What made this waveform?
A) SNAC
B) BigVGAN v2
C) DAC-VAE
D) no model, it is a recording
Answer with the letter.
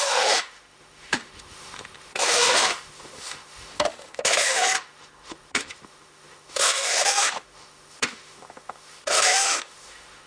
C